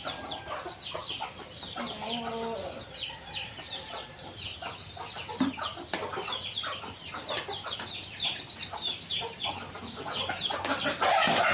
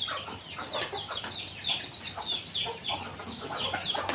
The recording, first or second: second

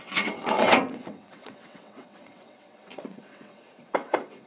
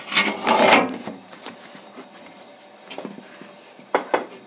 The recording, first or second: second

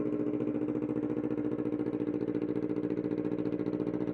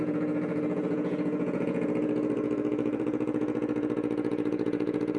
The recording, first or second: first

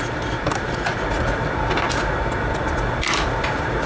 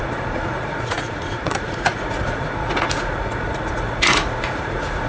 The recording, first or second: first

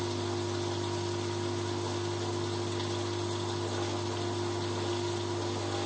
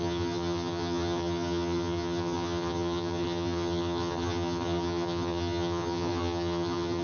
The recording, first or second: first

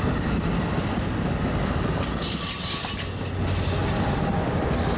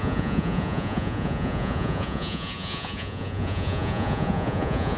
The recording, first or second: first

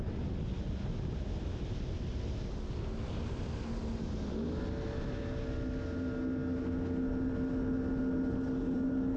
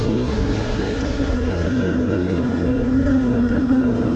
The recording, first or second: first